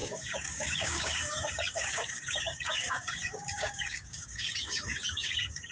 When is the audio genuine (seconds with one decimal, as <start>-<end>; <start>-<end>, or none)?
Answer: none